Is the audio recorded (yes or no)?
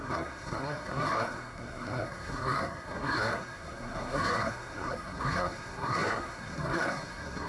no